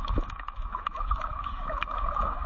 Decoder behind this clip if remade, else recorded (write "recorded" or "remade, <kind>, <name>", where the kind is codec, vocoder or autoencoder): remade, autoencoder, DAC-VAE